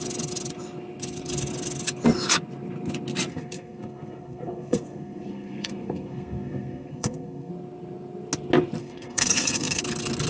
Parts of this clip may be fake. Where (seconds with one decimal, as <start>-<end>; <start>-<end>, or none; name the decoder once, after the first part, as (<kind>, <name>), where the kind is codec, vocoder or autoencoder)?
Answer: 3.3-7.5 (codec, SNAC); 8.8-9.8